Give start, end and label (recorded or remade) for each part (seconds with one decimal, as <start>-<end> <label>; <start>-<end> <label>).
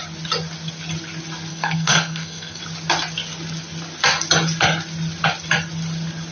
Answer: 0.0-1.5 recorded; 1.5-2.6 remade; 2.6-6.3 recorded